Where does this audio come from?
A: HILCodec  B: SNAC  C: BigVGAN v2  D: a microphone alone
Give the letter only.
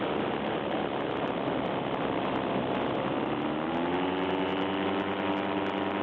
D